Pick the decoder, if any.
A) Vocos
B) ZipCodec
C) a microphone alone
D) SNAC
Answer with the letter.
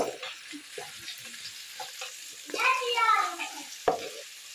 C